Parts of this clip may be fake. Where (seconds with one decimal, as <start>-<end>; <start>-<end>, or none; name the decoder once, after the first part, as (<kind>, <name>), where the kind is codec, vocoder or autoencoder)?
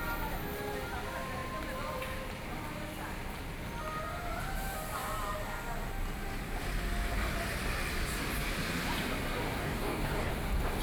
9.6-10.3 (codec, DAC)